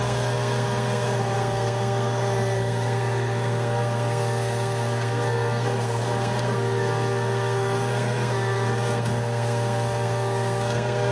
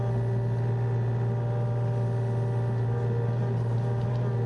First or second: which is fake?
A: first